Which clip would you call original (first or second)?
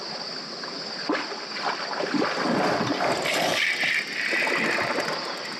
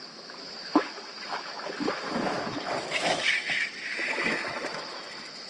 first